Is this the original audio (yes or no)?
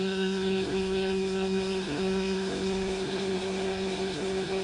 no